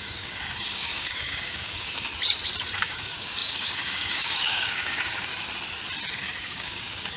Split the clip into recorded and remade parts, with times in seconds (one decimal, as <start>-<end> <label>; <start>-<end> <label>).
0.0-2.1 remade; 2.1-2.8 recorded; 2.8-5.3 remade; 5.3-6.2 recorded; 6.2-7.2 remade